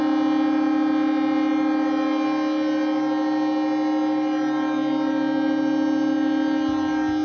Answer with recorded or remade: recorded